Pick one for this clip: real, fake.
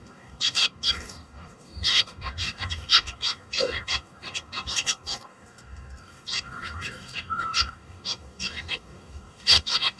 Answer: fake